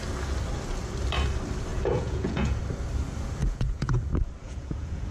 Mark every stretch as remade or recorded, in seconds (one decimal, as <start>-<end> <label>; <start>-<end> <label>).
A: 0.0-1.7 recorded; 1.7-2.6 remade; 2.6-3.4 recorded; 3.4-4.0 remade; 4.0-4.4 recorded; 4.4-5.1 remade